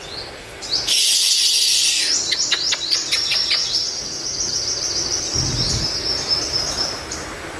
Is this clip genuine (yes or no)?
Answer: no